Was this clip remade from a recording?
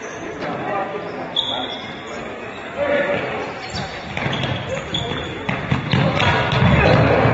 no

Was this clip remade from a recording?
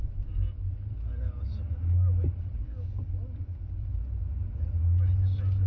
no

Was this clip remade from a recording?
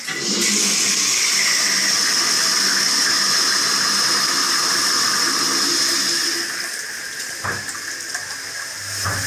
no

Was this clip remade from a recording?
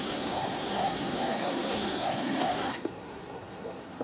yes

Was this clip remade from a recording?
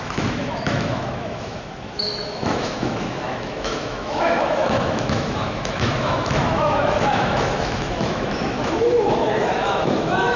yes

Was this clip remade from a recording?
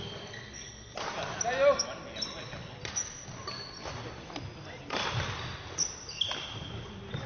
no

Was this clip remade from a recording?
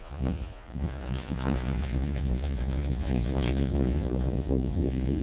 yes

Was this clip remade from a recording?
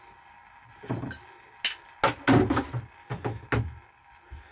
no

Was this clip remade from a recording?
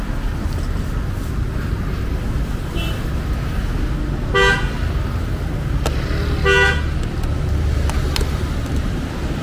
no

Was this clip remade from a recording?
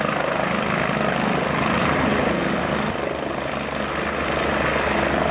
no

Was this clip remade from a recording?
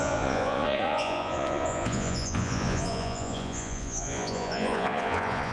yes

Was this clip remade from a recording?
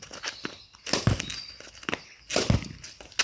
no